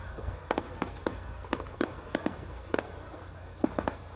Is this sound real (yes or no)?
no